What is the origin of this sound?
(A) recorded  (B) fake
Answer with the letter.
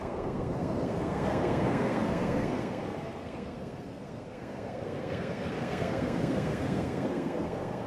B